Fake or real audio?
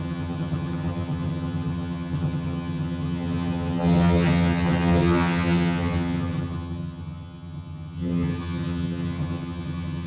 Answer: fake